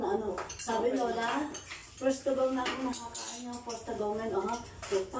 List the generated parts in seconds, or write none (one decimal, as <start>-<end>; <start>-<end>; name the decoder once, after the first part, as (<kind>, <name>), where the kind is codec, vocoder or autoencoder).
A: none